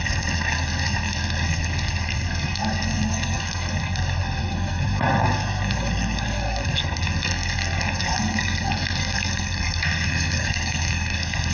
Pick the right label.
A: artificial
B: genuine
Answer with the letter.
A